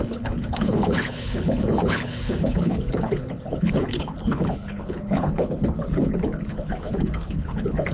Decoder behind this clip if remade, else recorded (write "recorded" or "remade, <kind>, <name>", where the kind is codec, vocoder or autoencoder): remade, codec, HILCodec